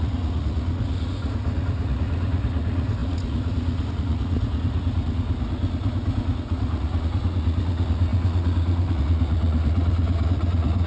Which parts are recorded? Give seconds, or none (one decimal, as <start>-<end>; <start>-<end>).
none